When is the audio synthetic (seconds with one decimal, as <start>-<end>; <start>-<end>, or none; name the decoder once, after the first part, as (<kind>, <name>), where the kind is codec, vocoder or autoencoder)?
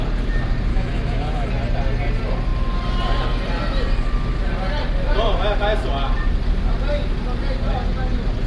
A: 0.7-1.5 (autoencoder, DAC-VAE)